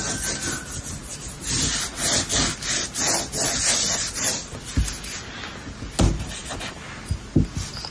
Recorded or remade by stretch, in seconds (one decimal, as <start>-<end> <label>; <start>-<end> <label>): 0.0-7.9 recorded